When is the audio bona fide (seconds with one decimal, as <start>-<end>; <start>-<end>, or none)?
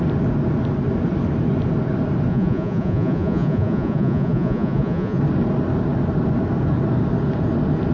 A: 0.0-2.3; 5.2-7.9